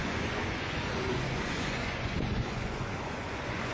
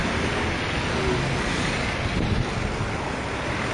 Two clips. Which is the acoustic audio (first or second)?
second